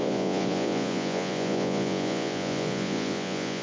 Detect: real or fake fake